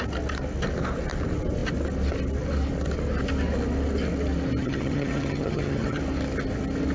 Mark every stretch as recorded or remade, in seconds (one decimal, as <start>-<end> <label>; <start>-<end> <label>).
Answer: 0.0-4.6 recorded; 4.6-6.0 remade; 6.0-6.9 recorded